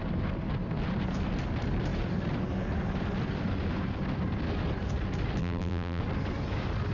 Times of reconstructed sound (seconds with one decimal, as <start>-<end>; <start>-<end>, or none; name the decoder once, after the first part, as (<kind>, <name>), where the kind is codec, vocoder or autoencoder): 5.4-6.0 (vocoder, BigVGAN v2)